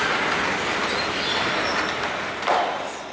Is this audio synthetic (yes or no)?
no